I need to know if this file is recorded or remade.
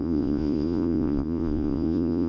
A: remade